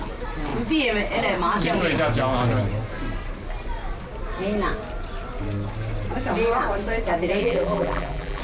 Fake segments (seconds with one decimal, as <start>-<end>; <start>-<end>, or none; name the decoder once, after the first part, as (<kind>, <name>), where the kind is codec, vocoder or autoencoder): 7.4-8.4 (vocoder, BigVGAN v2)